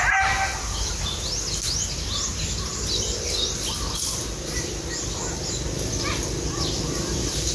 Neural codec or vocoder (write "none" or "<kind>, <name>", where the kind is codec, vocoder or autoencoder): none